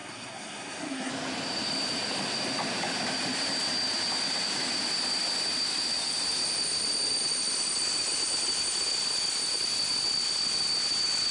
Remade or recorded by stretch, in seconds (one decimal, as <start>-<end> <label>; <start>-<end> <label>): 0.0-1.1 remade; 1.1-11.3 recorded